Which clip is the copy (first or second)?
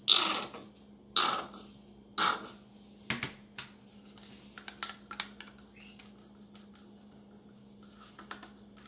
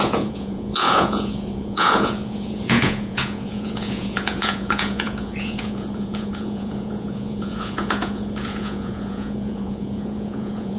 second